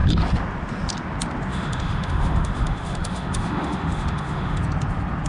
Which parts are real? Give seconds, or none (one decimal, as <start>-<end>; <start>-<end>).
0.0-1.5; 4.6-5.3